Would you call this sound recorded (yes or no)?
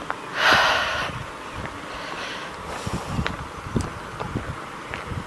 yes